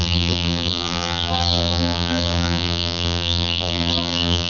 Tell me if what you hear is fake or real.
fake